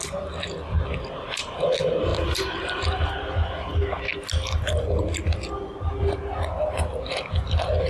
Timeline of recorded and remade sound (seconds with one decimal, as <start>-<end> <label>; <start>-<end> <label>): 0.0-2.1 recorded; 2.1-3.0 remade; 3.0-7.9 recorded